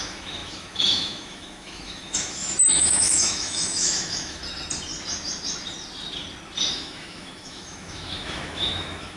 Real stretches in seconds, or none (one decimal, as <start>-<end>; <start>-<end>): 4.4-6.7